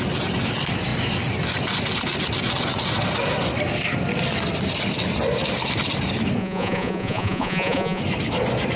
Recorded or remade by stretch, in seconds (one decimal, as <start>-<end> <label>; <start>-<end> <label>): 0.0-6.4 recorded; 6.4-8.0 remade; 8.0-8.8 recorded